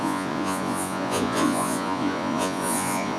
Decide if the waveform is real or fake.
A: fake